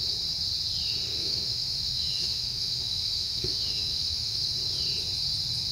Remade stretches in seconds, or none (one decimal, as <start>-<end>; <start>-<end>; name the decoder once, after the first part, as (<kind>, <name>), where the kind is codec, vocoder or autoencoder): 1.1-4.5 (autoencoder, DAC-VAE)